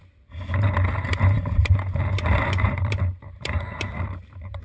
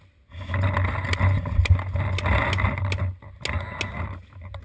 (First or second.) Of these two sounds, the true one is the second